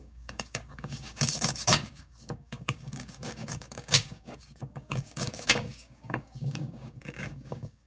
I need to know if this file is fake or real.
fake